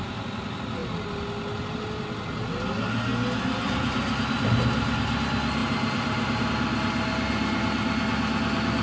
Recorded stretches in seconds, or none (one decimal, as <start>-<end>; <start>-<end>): 0.0-5.6; 6.5-8.8